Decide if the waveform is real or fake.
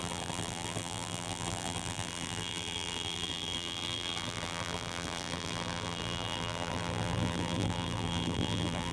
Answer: fake